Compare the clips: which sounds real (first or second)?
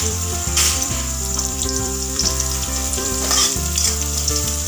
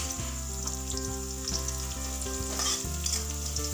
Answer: second